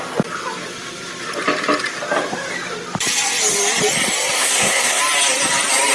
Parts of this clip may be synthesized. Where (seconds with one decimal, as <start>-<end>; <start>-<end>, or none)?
4.4-5.0